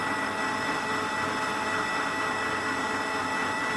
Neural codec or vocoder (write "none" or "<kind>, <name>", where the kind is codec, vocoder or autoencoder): none